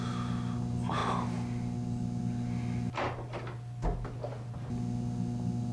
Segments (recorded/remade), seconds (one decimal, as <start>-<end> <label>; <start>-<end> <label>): 0.0-5.7 recorded